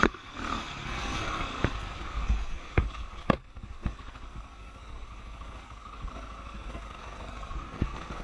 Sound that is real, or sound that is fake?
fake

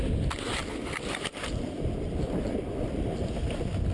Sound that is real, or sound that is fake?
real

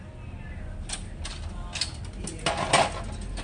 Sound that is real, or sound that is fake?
real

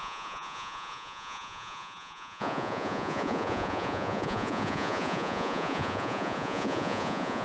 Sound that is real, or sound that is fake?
fake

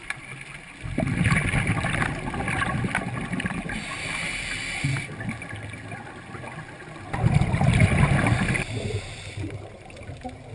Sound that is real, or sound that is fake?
real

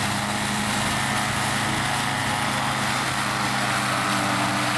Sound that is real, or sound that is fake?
real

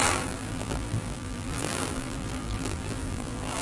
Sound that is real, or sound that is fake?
fake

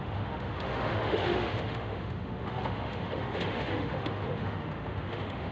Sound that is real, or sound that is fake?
fake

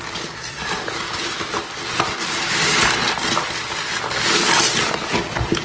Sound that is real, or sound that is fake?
real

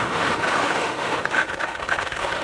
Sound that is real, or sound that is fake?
fake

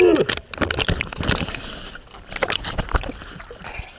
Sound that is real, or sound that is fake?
fake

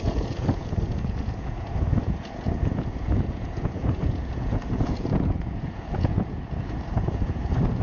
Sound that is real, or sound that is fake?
fake